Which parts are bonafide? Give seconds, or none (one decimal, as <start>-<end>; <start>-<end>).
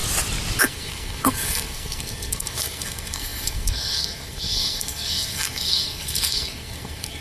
0.0-0.6